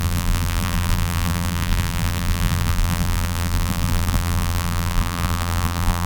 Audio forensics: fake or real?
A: fake